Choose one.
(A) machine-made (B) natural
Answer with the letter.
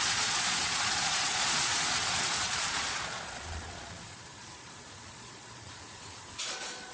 A